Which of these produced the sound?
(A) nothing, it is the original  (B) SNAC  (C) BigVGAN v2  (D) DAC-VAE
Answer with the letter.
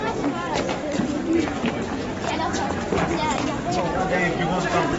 A